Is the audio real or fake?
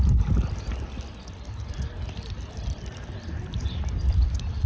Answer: fake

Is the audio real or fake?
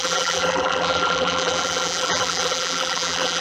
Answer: fake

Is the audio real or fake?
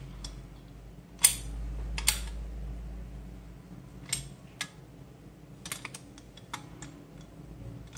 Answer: real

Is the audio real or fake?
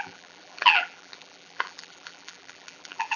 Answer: fake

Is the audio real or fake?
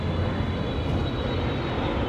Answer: real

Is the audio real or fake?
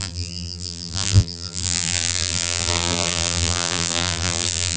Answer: fake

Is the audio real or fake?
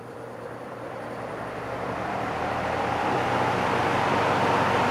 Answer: fake